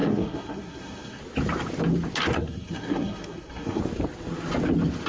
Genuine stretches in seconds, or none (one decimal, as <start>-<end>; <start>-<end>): 1.2-2.3; 3.8-5.1